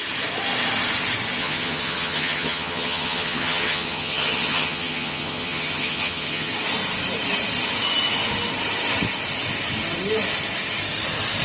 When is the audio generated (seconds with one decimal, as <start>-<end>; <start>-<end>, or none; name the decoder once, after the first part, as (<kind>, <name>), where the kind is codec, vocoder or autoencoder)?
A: 1.4-6.5 (vocoder, HiFi-GAN)